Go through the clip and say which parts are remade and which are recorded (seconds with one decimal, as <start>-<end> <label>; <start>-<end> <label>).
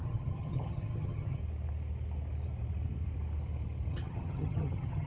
0.0-1.4 remade; 1.4-3.9 recorded; 3.9-5.1 remade